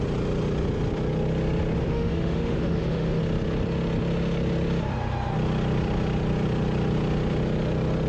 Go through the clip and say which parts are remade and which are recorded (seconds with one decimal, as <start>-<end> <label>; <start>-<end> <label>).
0.0-1.8 recorded; 1.8-3.2 remade; 3.2-8.1 recorded